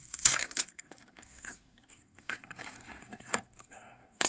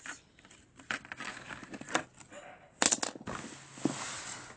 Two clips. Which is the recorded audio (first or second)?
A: second